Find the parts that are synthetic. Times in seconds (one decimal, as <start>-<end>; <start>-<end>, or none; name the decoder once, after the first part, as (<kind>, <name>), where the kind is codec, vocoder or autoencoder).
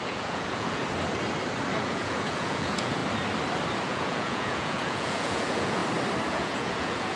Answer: 0.0-0.8 (vocoder, Vocos); 1.8-3.0; 3.8-5.8; 6.3-7.2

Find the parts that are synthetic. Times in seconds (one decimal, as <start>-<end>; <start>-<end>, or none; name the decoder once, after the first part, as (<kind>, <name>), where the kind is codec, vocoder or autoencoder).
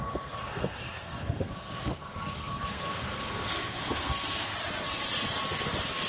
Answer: 0.0-4.5 (codec, SNAC)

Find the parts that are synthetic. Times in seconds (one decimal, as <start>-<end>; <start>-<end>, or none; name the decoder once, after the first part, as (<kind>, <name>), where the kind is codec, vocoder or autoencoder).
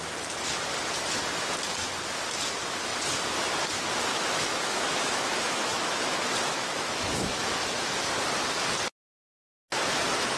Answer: 4.1-8.1 (autoencoder, DAC-VAE)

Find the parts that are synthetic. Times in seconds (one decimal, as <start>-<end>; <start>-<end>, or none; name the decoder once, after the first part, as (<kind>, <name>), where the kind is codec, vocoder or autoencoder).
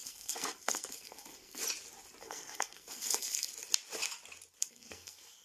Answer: 0.0-1.6 (codec, SNAC); 2.2-3.5; 4.6-5.4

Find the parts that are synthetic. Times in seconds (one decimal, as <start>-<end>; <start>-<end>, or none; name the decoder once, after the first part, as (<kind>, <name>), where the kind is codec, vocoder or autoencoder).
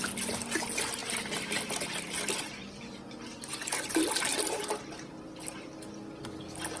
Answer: none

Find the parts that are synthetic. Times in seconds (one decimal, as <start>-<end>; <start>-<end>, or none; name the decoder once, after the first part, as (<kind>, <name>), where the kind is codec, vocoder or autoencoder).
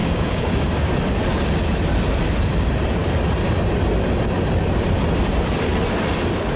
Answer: 0.0-1.0 (codec, DAC)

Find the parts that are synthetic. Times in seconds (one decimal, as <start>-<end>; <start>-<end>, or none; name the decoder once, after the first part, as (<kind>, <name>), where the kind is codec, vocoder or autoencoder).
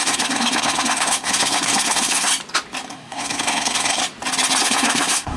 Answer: 0.0-2.3 (codec, SNAC); 2.9-4.0; 4.6-5.4